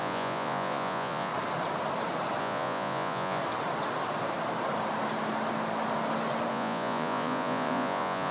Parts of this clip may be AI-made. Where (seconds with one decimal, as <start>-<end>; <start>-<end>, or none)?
0.0-1.3; 2.4-3.4; 6.5-8.3